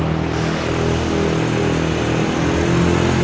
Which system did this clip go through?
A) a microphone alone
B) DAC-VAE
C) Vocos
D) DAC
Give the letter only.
A